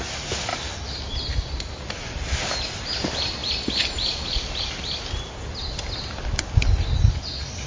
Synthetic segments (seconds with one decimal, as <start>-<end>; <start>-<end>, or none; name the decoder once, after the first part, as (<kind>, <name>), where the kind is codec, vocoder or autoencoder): none

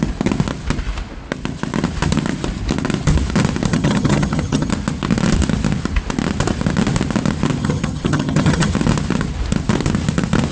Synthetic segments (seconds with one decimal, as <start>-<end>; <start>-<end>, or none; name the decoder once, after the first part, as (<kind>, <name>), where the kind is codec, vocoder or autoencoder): 3.7-4.7 (vocoder, HiFi-GAN); 7.6-8.7

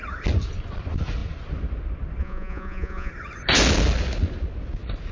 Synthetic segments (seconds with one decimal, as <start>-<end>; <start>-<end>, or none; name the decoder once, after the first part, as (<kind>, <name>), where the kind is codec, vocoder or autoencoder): 2.2-3.1 (vocoder, Vocos)

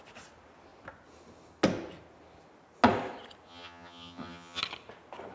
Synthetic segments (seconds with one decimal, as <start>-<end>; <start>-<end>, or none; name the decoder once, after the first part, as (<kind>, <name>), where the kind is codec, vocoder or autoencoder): 3.5-4.6 (vocoder, HiFi-GAN)

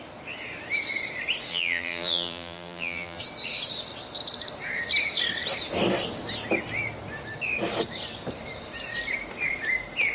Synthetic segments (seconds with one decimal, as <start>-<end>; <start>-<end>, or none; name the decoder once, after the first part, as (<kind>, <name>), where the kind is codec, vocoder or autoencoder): 1.5-3.2 (vocoder, BigVGAN v2)

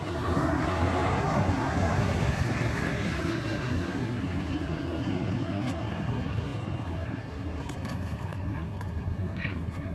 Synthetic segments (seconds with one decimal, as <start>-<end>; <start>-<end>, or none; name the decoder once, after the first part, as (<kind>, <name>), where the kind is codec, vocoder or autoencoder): 0.0-9.9 (codec, SNAC)